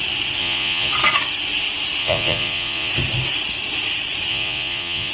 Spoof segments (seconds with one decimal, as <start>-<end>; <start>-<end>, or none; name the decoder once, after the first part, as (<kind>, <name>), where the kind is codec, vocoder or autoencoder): 0.4-0.9 (vocoder, Vocos); 2.0-2.9; 4.3-5.1